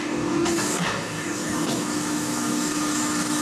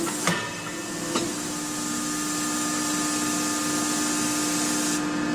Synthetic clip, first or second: first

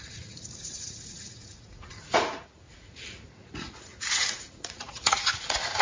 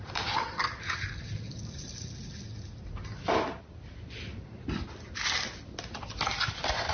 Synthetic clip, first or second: first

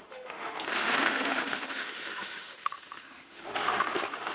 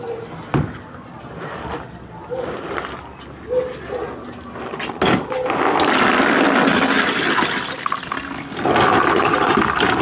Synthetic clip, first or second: first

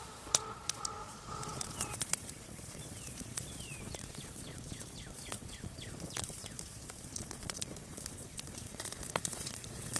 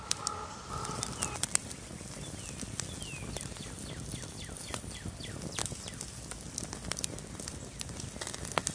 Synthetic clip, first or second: first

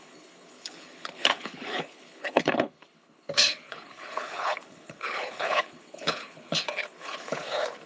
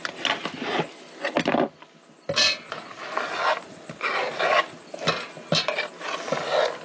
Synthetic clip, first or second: first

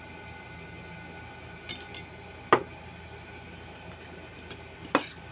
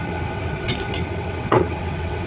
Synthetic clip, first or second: second